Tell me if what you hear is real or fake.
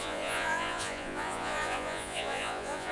fake